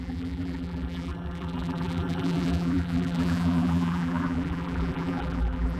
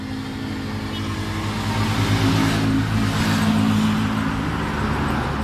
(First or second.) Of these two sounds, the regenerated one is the first